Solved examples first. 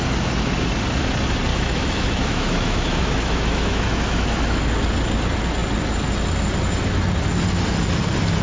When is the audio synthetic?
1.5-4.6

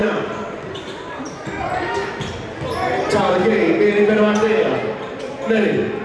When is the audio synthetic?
0.0-1.5